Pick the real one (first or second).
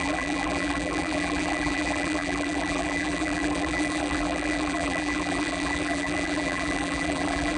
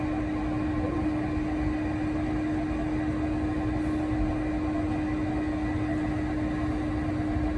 second